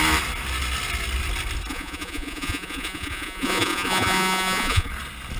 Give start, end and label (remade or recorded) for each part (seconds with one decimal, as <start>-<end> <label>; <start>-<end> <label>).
0.0-1.7 recorded; 1.7-4.9 remade; 4.9-5.4 recorded